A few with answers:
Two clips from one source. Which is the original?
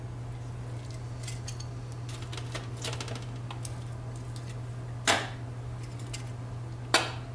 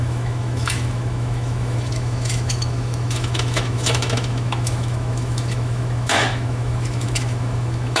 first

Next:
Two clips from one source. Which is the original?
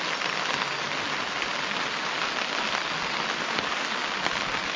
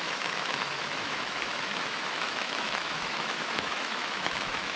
first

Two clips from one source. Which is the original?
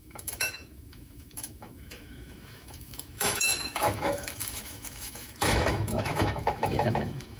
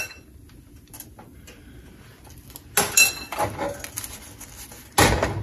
second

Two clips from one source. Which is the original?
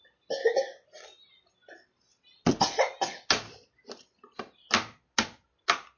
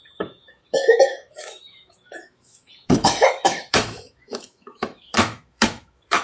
first